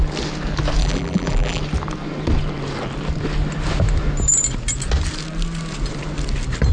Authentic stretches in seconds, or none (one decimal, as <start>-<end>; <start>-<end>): 0.0-0.8; 1.6-6.7